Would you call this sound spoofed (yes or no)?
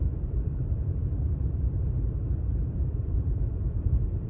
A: yes